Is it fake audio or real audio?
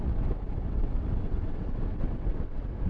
fake